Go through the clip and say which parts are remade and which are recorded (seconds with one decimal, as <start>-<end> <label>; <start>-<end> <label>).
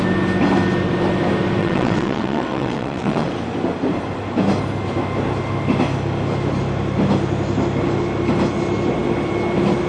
0.0-1.6 recorded; 1.6-3.3 remade; 3.3-9.9 recorded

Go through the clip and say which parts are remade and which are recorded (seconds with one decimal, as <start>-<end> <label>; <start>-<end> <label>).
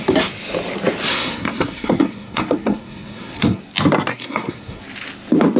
0.0-1.1 recorded; 1.1-3.6 remade; 3.6-4.1 recorded; 4.1-4.8 remade; 4.8-5.6 recorded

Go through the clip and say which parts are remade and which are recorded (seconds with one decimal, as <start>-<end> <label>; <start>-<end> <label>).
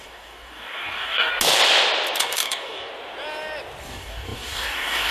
0.0-1.3 remade; 1.3-2.2 recorded; 2.2-2.9 remade; 2.9-3.8 recorded; 3.8-5.1 remade